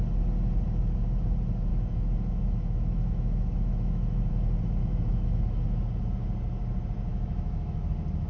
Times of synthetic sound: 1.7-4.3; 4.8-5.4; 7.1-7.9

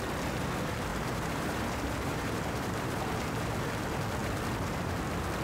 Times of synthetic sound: 0.9-3.5

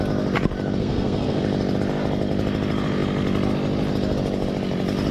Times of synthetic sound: 0.8-1.4

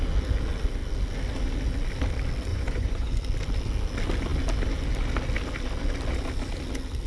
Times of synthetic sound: 2.5-3.1